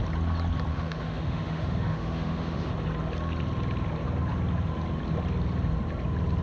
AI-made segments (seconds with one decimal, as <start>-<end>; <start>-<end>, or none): 0.7-2.7